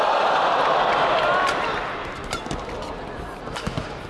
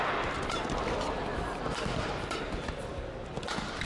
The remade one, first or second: second